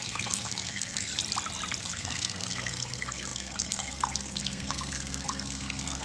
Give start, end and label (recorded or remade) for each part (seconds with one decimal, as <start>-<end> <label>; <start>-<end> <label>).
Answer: 0.0-1.1 remade; 1.1-1.8 recorded; 1.8-6.0 remade